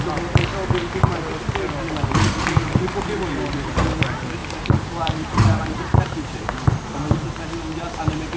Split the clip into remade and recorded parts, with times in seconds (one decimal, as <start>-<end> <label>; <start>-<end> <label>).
0.0-4.4 recorded; 4.4-6.5 remade; 6.5-8.4 recorded